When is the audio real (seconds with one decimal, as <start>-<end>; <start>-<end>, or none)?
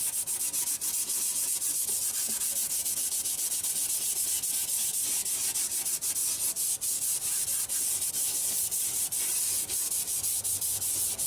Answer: 0.0-2.6; 3.6-11.3